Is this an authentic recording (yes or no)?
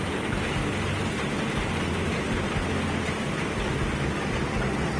yes